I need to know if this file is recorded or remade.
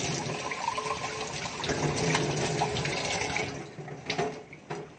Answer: recorded